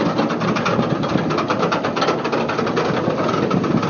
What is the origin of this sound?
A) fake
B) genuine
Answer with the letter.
B